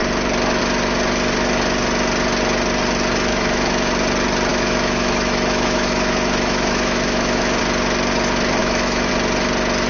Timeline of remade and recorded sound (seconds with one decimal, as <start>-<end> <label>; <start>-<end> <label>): 0.0-3.3 recorded; 3.3-3.9 remade; 3.9-4.5 recorded; 4.5-7.6 remade; 7.6-8.6 recorded; 8.6-9.1 remade; 9.1-9.9 recorded